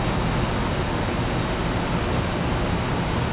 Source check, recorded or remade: recorded